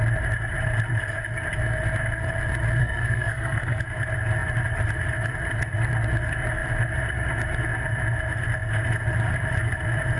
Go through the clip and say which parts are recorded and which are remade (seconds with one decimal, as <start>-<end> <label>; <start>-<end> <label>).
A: 0.0-2.8 recorded; 2.8-3.8 remade; 3.8-10.2 recorded